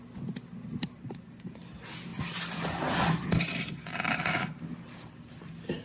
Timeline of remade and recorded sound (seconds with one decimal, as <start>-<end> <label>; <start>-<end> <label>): 0.0-5.8 recorded